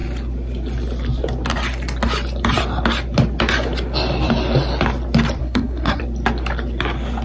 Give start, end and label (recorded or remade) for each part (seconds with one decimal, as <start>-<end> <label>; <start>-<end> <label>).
0.0-5.4 recorded; 5.4-6.0 remade; 6.0-7.2 recorded